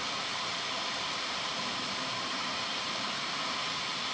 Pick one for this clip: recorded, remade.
remade